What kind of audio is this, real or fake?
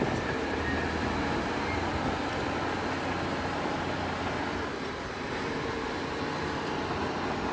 real